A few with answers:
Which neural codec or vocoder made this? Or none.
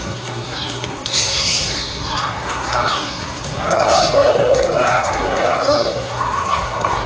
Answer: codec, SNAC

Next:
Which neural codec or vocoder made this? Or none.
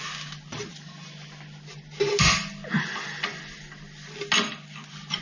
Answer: none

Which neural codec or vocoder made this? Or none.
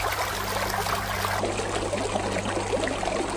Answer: none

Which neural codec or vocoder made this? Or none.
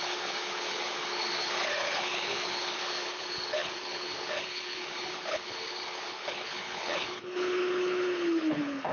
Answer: codec, HILCodec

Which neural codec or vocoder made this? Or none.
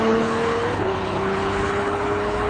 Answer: codec, HILCodec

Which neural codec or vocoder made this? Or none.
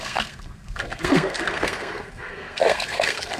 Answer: codec, SNAC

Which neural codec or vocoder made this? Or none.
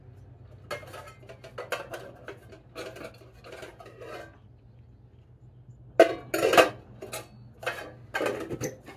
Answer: none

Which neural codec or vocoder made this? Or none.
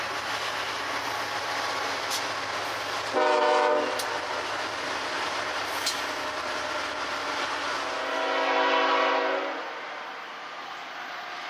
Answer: none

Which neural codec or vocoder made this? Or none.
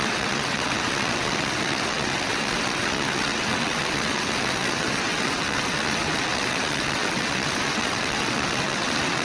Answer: vocoder, WaveNeXt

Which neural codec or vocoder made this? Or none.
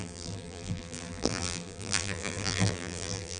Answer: vocoder, BigVGAN v2